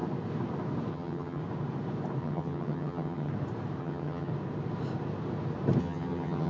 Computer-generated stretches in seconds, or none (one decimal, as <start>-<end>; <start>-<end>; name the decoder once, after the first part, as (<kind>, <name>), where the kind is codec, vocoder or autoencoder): 0.9-1.4 (vocoder, HiFi-GAN); 2.2-3.3; 3.8-4.3; 5.8-6.5